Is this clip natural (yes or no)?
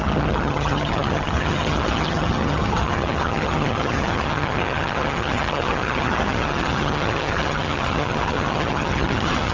no